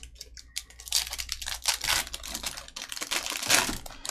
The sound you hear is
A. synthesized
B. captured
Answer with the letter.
B